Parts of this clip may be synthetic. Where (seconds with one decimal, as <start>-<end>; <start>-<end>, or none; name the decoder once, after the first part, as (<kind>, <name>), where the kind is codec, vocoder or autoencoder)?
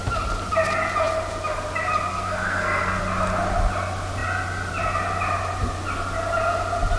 2.1-3.0 (codec, SNAC)